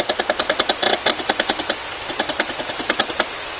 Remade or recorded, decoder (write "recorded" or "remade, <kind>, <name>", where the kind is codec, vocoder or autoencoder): recorded